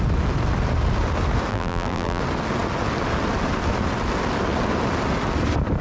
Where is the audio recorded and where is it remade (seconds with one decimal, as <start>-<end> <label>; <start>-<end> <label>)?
0.0-1.5 recorded; 1.5-2.2 remade; 2.2-5.8 recorded